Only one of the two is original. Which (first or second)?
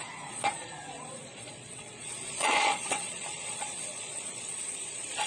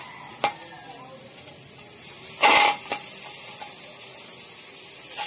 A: second